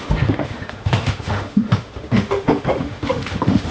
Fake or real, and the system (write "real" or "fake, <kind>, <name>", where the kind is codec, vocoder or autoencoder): fake, autoencoder, DAC-VAE